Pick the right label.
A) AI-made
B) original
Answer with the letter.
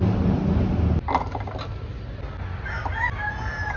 B